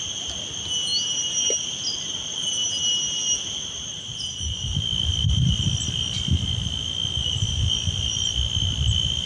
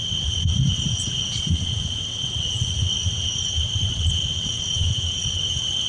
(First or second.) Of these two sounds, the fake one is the second